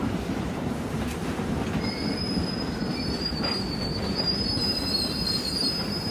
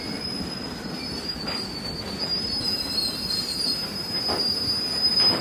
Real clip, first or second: second